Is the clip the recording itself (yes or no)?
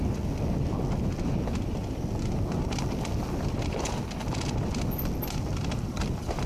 yes